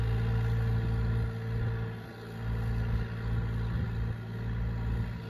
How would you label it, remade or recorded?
recorded